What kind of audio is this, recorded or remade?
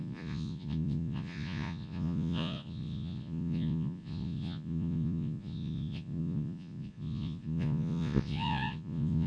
remade